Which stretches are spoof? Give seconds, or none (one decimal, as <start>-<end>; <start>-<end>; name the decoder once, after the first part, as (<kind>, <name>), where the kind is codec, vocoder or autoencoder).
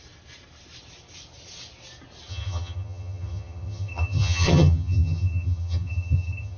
2.3-6.6 (vocoder, HiFi-GAN)